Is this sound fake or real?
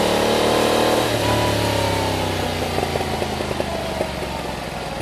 real